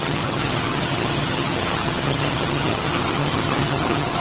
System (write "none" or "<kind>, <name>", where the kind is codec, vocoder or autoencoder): vocoder, HiFi-GAN